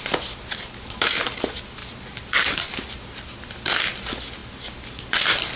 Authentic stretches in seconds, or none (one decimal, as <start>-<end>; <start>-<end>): 0.0-1.8; 3.5-5.6